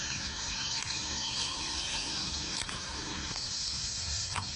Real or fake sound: fake